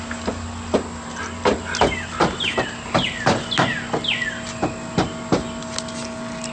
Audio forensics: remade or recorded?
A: recorded